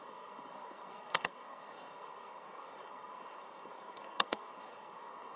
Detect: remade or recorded remade